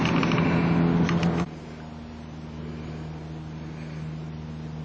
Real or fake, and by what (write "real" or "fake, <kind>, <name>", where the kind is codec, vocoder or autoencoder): real